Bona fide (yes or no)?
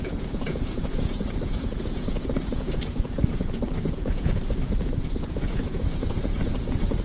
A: no